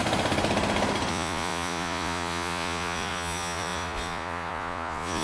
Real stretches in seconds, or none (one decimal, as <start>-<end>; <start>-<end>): 0.0-1.1